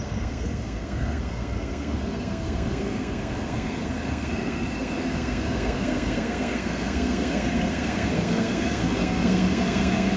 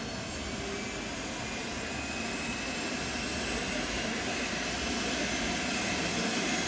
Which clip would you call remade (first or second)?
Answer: first